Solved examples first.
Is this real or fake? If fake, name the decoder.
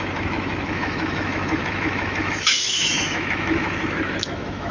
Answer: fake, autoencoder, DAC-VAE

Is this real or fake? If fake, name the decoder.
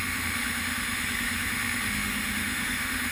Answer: fake, autoencoder, DAC-VAE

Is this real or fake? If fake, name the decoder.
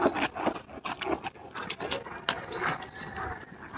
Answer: real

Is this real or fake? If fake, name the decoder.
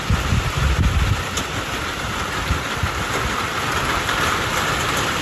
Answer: real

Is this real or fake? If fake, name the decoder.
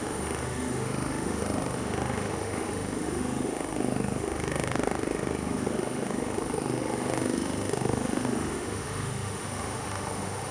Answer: fake, autoencoder, DAC-VAE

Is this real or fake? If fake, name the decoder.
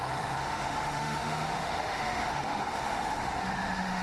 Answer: fake, autoencoder, DAC-VAE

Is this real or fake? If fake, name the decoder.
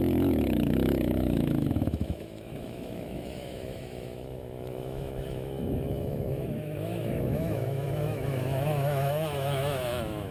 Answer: fake, autoencoder, DAC-VAE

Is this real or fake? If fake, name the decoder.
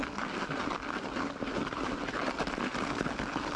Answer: real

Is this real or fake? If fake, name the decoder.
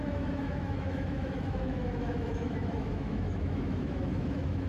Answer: fake, autoencoder, DAC-VAE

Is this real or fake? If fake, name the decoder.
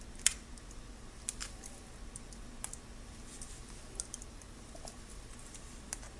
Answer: real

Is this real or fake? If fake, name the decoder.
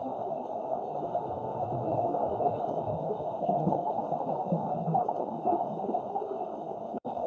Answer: fake, autoencoder, DAC-VAE